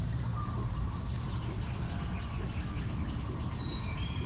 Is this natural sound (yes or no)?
yes